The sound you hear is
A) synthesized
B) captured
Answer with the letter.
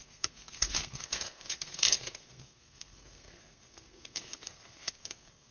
A